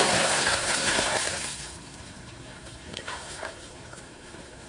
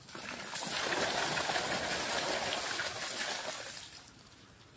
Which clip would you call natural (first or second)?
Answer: second